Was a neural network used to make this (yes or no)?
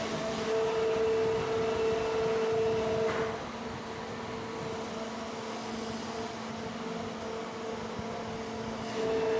no